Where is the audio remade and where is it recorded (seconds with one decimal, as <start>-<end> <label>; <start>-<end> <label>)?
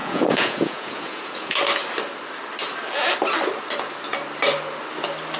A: 0.0-1.6 remade; 1.6-5.4 recorded